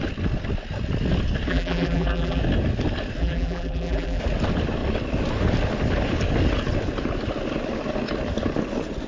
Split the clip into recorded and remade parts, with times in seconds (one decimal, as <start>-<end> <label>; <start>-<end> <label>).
0.0-1.5 recorded; 1.5-2.4 remade; 2.4-3.2 recorded; 3.2-4.2 remade; 4.2-9.1 recorded